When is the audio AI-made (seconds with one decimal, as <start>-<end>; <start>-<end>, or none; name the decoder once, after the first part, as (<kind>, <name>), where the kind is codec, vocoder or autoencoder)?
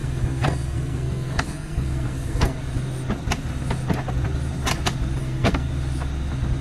0.0-2.6 (codec, SNAC); 5.2-5.7